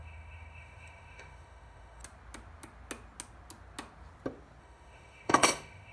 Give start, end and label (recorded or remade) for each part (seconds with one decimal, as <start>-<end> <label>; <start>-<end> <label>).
0.0-2.0 remade; 2.0-4.6 recorded; 4.6-5.9 remade